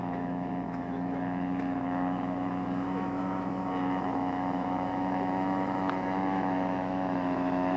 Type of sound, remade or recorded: remade